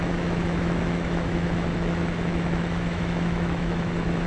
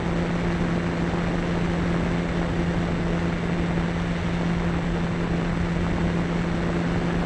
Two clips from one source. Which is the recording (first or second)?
second